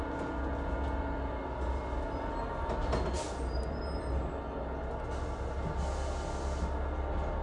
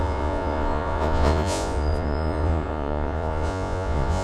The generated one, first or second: second